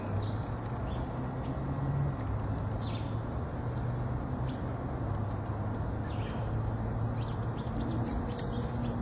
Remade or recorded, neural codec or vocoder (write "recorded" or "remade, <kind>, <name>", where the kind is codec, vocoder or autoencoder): recorded